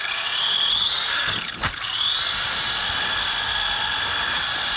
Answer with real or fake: real